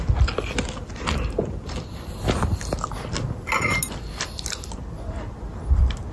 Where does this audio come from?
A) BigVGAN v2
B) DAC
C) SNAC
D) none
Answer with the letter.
D